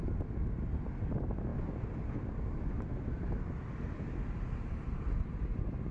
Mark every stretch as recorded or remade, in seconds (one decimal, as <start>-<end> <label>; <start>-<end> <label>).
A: 0.0-5.9 recorded